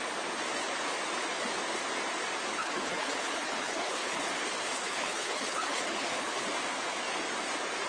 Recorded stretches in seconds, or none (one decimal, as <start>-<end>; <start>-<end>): 0.0-2.5; 4.3-4.8; 6.4-7.9